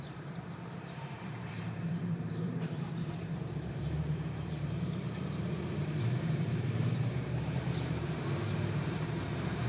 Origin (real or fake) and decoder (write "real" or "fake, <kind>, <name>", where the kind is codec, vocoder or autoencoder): fake, vocoder, BigVGAN v2